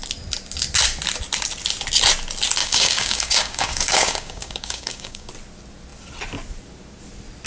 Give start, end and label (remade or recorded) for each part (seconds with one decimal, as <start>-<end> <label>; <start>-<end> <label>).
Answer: 0.0-2.6 recorded; 2.6-5.3 remade; 5.3-7.5 recorded